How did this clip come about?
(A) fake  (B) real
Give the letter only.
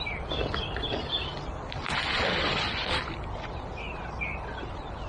B